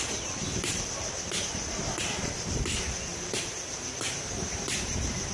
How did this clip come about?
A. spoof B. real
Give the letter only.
A